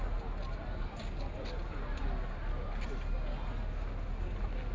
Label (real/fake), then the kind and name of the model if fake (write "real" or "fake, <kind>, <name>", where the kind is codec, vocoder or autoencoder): real